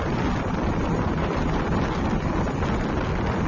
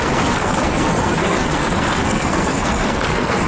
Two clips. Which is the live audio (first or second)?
first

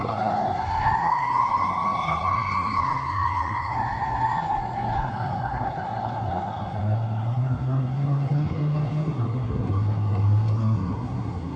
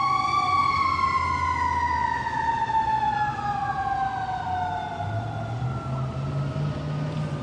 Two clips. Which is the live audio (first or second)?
second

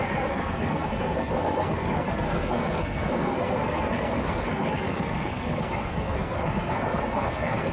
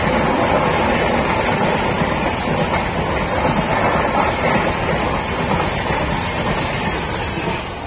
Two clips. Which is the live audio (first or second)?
second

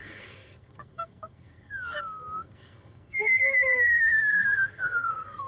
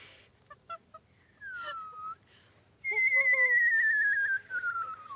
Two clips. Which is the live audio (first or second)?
second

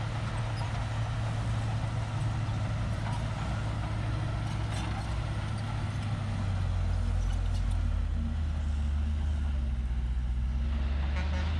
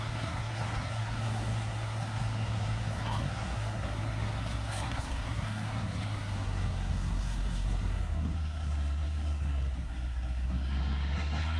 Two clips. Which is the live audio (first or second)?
first